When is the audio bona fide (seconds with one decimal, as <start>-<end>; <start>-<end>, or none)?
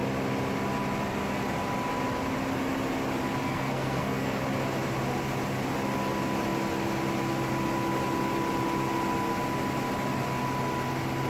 0.0-3.4; 4.4-11.3